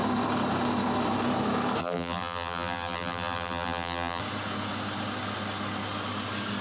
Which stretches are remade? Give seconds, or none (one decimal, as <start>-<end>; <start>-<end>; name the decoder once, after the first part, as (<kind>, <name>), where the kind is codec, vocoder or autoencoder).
1.8-4.2 (vocoder, BigVGAN v2)